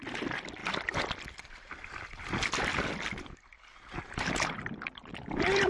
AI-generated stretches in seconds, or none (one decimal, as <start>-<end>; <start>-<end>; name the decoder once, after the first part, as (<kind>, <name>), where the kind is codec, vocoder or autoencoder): 0.0-0.6 (vocoder, BigVGAN v2); 4.0-5.7